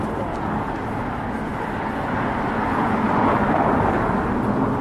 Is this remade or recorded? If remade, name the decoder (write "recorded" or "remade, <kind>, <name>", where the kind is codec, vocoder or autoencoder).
recorded